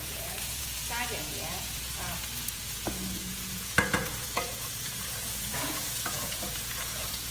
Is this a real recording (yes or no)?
no